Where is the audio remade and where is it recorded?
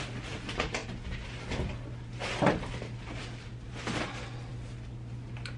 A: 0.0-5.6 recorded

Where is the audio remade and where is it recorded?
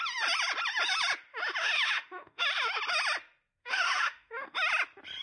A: 0.0-1.3 recorded; 1.3-2.8 remade; 2.8-3.6 recorded; 3.6-4.7 remade; 4.7-5.2 recorded